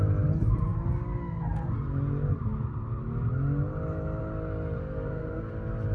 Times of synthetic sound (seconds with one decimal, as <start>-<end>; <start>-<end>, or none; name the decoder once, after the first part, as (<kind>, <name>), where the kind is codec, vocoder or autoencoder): 4.8-5.5 (codec, SNAC)